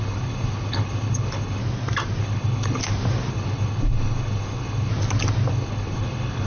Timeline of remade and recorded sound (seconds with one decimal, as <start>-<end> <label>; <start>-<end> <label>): 0.0-1.6 remade; 1.6-2.2 recorded; 2.2-2.8 remade; 2.8-3.3 recorded; 3.3-4.9 remade; 4.9-5.5 recorded; 5.5-6.5 remade